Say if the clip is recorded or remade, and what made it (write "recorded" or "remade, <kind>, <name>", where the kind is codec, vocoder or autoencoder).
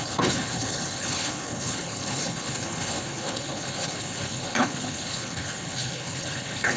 remade, codec, HILCodec